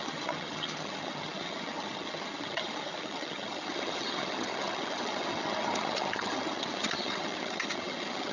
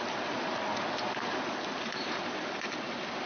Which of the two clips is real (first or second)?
second